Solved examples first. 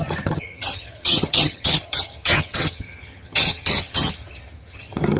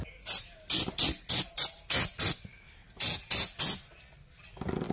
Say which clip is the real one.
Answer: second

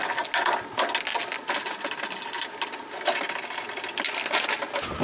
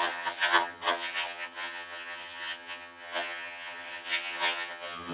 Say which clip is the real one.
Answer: first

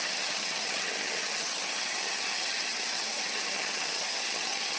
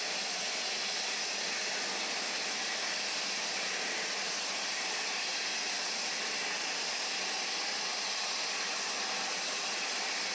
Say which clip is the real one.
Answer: second